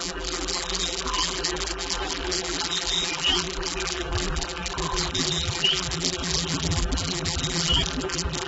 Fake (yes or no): yes